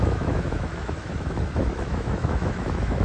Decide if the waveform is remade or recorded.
remade